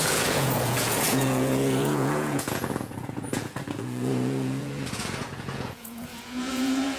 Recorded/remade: remade